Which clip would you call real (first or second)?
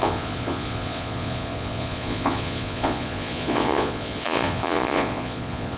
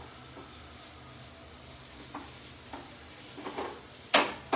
second